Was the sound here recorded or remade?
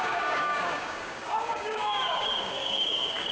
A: remade